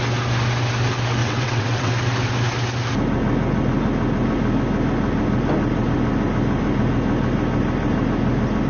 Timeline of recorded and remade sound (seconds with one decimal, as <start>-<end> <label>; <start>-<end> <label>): 0.0-1.2 recorded; 1.2-1.9 remade; 1.9-8.7 recorded